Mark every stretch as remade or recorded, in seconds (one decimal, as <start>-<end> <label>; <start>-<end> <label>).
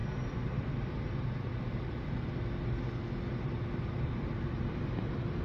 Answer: 0.0-1.5 remade; 1.5-4.7 recorded; 4.7-5.4 remade